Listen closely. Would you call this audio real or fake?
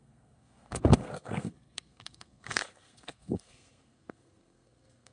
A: fake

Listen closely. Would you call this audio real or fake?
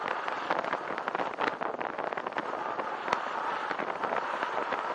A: real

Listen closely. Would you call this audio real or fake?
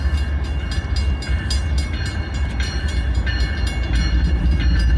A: real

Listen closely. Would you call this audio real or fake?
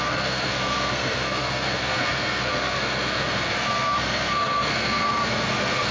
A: fake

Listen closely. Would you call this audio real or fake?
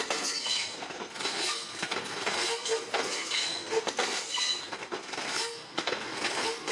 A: fake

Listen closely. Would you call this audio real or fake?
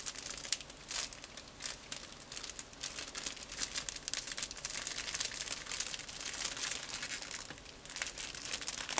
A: real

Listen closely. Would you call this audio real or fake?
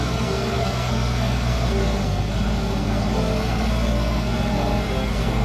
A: fake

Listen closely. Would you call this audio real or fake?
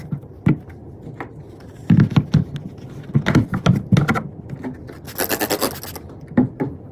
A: real